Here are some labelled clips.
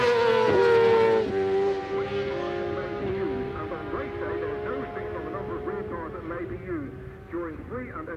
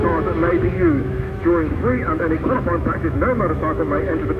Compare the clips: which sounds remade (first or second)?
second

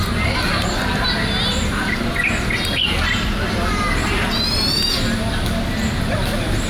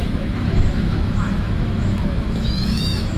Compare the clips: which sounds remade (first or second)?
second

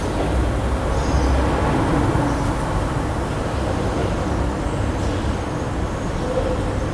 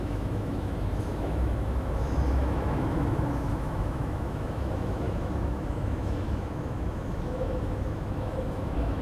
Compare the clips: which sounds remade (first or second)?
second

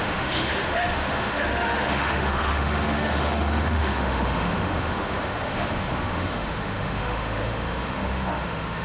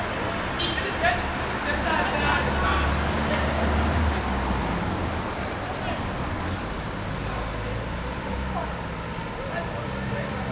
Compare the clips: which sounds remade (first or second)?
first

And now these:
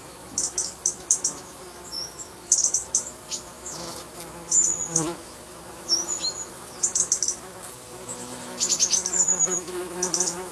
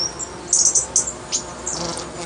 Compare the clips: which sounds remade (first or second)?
first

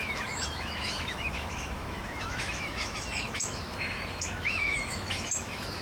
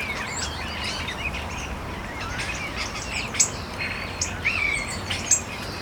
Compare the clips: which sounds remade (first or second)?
first